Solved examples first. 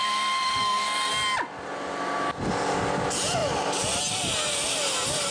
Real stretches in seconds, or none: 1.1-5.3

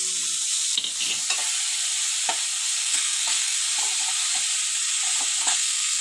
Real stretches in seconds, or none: 0.0-2.8; 3.6-5.4

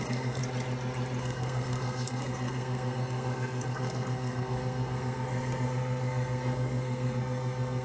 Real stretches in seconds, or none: 0.4-1.2

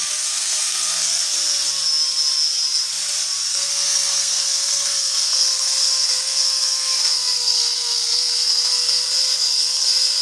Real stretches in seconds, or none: 1.2-3.5

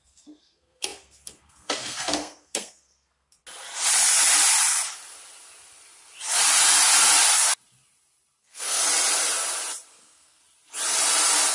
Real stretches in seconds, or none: 3.4-8.4; 8.8-9.9; 10.4-11.5

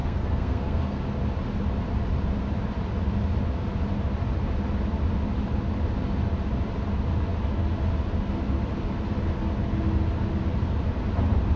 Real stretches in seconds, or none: 1.0-11.6